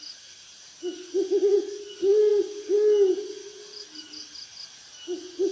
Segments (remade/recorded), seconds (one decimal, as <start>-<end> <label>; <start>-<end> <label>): 0.0-5.5 recorded